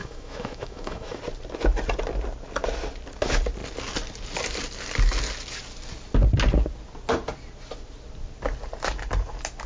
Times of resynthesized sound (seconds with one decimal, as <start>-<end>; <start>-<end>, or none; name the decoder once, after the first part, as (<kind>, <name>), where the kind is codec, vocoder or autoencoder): 0.0-1.2 (autoencoder, DAC-VAE)